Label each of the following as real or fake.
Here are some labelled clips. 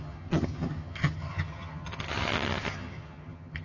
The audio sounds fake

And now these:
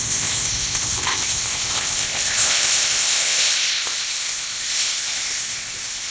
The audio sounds fake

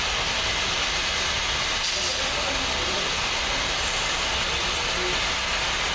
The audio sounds real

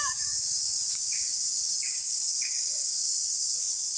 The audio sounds fake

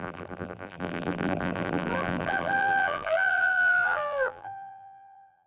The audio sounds fake